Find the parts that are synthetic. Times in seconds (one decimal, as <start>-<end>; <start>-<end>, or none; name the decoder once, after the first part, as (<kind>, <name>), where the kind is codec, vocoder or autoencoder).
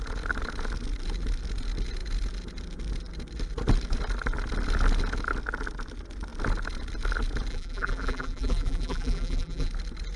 7.5-9.7 (vocoder, BigVGAN v2)